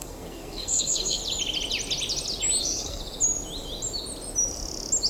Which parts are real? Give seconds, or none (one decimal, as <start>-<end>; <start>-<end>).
1.2-2.6; 3.0-5.1